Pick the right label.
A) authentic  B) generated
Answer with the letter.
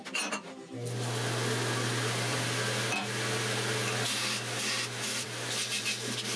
A